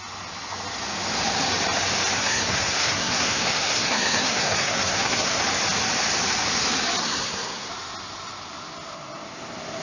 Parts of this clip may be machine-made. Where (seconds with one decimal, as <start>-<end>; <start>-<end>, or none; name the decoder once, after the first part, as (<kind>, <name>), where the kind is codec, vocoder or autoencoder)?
2.2-5.4 (codec, SNAC); 7.0-7.7